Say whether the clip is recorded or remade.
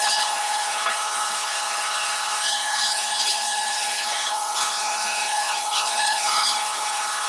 remade